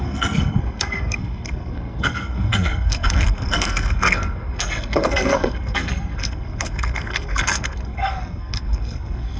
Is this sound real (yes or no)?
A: no